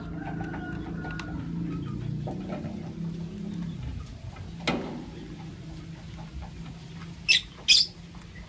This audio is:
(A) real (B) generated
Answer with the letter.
A